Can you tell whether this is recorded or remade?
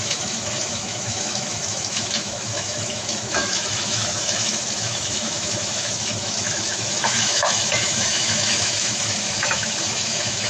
remade